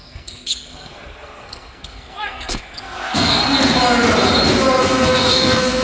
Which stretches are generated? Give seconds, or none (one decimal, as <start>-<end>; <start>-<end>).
0.0-3.4; 4.8-5.8